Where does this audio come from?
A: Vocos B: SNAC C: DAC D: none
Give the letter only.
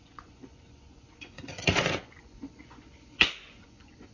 A